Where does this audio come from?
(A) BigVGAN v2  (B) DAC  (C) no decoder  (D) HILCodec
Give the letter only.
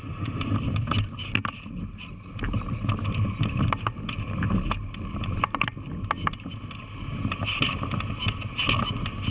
C